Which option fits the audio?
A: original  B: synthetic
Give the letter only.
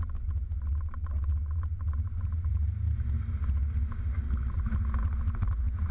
A